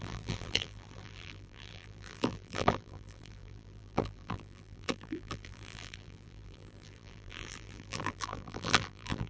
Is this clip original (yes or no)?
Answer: no